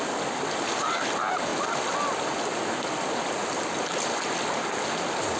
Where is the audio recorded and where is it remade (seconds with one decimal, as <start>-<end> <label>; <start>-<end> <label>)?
0.0-5.4 recorded